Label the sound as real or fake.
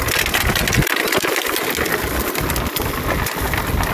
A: real